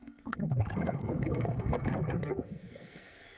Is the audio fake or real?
fake